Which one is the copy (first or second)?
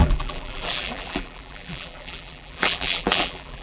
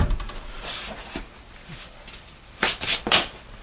first